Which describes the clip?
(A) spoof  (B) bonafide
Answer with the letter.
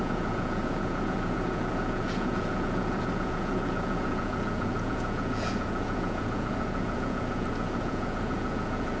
A